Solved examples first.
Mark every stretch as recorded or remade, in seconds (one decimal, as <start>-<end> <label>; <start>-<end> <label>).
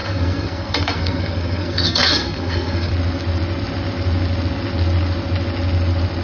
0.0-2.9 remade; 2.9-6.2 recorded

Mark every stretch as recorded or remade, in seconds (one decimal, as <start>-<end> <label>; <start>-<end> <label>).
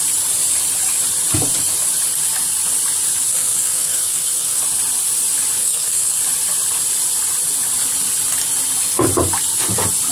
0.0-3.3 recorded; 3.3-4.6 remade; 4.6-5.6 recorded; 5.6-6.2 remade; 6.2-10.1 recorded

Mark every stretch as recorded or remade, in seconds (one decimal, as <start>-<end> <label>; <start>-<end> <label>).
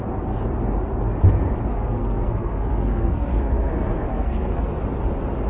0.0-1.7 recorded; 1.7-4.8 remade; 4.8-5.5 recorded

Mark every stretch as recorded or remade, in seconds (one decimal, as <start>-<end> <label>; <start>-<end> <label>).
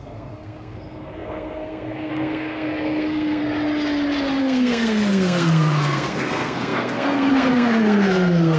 0.0-3.4 remade; 3.4-4.4 recorded; 4.4-8.6 remade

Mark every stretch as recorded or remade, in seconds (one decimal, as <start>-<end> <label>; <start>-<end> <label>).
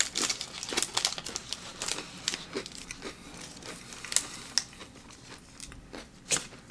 0.0-6.7 recorded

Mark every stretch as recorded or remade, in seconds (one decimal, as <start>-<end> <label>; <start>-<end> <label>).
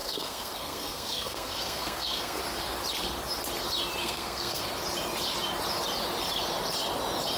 0.0-2.4 remade; 2.4-4.0 recorded; 4.0-4.6 remade; 4.6-7.4 recorded